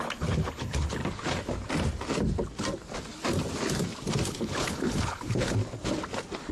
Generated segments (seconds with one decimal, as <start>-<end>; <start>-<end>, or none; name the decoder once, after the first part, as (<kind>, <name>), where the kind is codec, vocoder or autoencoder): 0.0-1.0 (codec, HILCodec); 4.3-5.6